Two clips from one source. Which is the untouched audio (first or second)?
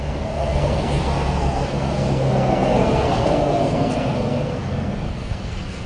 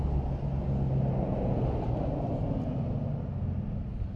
second